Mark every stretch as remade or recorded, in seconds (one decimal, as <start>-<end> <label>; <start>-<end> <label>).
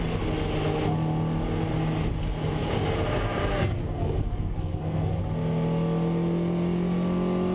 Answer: 0.0-3.5 recorded; 3.5-5.2 remade; 5.2-7.5 recorded